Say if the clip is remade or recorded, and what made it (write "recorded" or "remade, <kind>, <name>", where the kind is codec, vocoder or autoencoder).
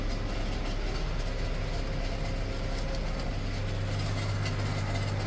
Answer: recorded